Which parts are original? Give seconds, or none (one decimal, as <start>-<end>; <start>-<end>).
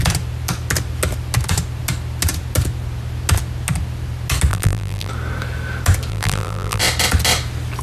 0.0-4.5; 5.1-6.1; 6.8-7.8